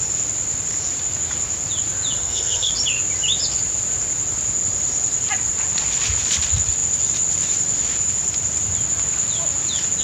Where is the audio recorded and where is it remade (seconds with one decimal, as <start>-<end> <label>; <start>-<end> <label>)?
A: 0.0-2.2 recorded; 2.2-2.7 remade; 2.7-10.0 recorded